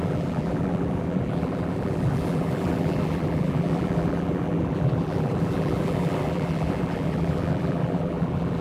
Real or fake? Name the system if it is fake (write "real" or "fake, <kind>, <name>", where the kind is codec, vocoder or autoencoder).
fake, vocoder, BigVGAN v2